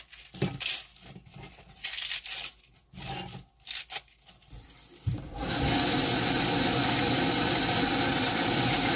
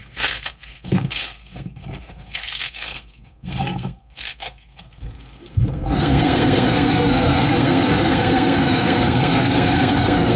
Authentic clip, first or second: first